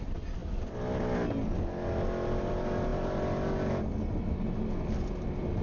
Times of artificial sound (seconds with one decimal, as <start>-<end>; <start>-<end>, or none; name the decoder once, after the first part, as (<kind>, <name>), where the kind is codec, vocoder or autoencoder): none